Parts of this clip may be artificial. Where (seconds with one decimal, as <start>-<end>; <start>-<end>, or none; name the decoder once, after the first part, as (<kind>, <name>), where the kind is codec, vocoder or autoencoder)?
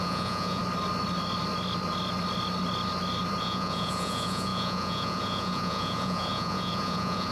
0.0-0.6 (vocoder, Vocos); 3.4-7.3